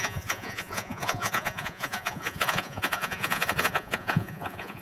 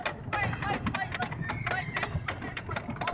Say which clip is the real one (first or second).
second